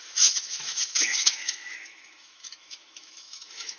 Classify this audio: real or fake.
fake